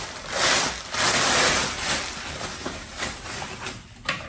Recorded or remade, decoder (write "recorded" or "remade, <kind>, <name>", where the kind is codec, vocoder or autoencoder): recorded